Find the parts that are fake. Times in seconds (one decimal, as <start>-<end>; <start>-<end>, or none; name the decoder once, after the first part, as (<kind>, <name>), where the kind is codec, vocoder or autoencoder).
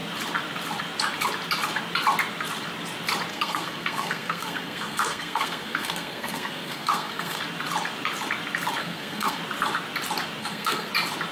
3.3-7.4 (codec, SNAC); 8.8-9.4; 10.4-10.9